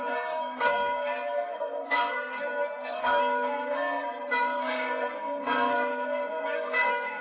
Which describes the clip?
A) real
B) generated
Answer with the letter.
B